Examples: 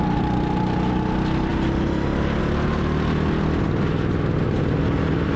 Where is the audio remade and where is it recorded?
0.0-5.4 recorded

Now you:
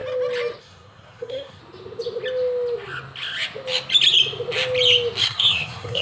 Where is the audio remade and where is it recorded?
0.0-0.6 recorded; 0.6-1.6 remade; 1.6-5.2 recorded; 5.2-6.0 remade

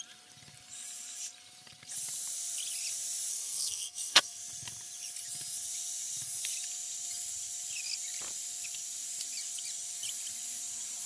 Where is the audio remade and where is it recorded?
0.0-3.3 recorded; 3.3-4.4 remade; 4.4-11.1 recorded